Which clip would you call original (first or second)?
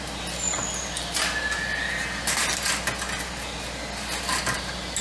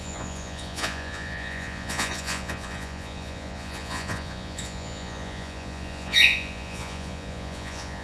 first